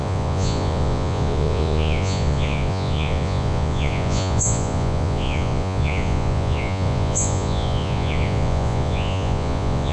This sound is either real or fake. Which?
fake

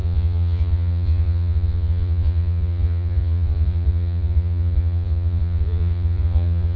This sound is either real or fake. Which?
fake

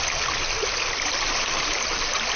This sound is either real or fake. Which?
real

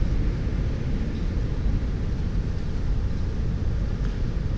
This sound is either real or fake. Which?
real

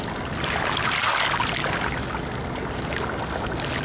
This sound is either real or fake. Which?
real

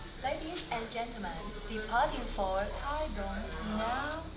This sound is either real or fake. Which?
real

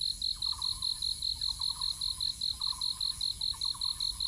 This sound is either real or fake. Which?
real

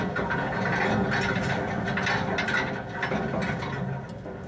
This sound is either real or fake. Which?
real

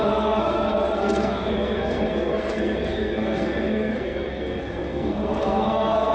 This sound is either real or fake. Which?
fake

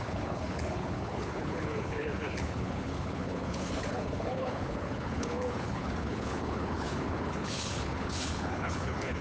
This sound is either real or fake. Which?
fake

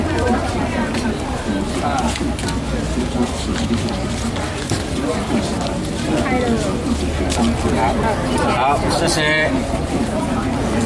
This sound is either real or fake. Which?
real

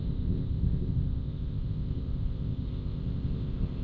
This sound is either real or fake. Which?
fake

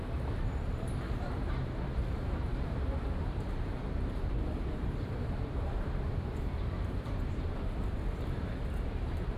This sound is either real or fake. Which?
fake